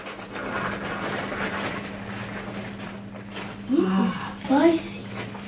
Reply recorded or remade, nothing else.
recorded